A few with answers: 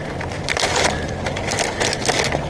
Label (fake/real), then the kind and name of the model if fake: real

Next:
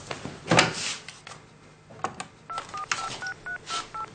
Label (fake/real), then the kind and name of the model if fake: real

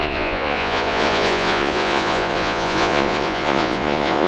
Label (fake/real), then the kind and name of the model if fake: fake, vocoder, Vocos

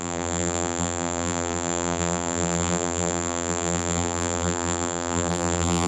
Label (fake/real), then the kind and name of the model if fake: fake, vocoder, BigVGAN v2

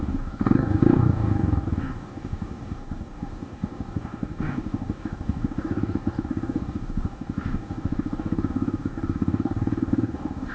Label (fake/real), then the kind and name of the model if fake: fake, codec, DAC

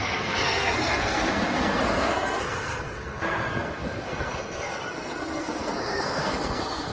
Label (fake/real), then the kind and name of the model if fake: fake, codec, SNAC